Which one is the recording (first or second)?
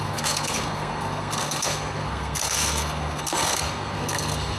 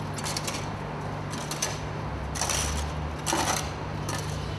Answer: second